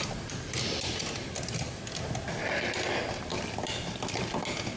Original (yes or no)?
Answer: yes